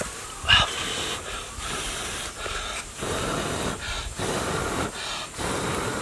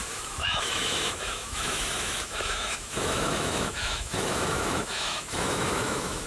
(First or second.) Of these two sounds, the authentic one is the first